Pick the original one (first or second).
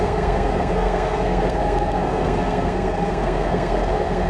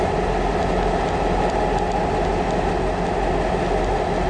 second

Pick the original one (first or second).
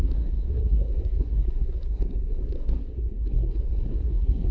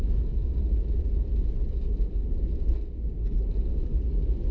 second